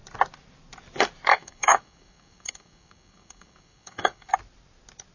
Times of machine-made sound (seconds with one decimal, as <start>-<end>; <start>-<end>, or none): 1.3-4.3